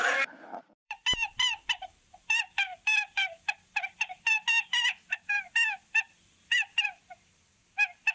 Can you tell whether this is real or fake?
fake